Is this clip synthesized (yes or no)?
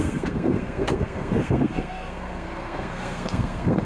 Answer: yes